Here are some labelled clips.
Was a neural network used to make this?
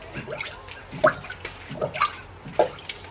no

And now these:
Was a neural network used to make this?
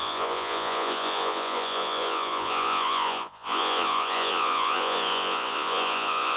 yes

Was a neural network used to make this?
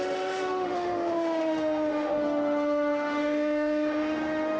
yes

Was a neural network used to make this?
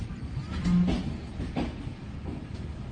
no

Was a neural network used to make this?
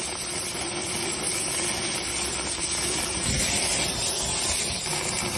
no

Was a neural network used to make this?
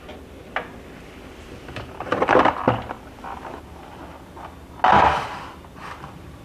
no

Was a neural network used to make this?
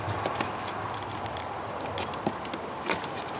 no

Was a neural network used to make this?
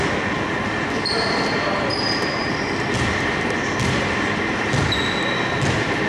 no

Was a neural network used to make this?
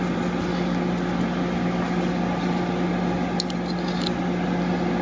no